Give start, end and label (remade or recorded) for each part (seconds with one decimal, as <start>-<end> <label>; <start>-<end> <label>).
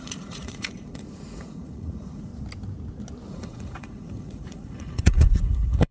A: 0.0-2.3 remade; 2.3-3.3 recorded; 3.3-5.9 remade